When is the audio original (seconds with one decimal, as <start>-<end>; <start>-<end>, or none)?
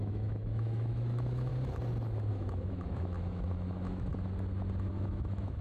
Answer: 1.5-2.3; 4.1-4.9